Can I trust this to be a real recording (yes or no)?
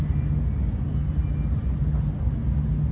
yes